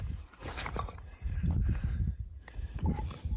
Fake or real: fake